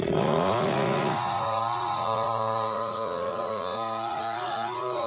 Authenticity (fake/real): fake